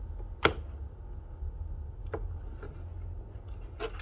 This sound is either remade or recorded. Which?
recorded